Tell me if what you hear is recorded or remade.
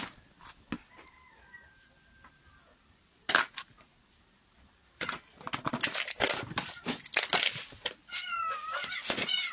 recorded